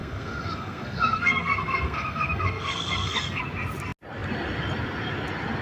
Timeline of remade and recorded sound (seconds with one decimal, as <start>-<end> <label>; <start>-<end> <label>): 0.0-3.4 remade; 3.4-5.6 recorded